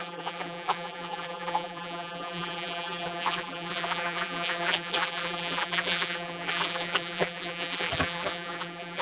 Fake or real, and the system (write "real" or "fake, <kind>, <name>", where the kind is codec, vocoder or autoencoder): fake, vocoder, BigVGAN v2